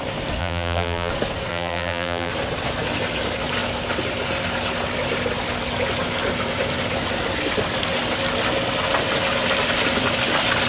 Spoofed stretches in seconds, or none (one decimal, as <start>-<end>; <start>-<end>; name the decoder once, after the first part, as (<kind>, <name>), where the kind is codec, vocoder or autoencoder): 0.4-1.1 (vocoder, BigVGAN v2); 1.5-2.3